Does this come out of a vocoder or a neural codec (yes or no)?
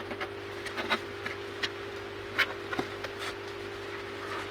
no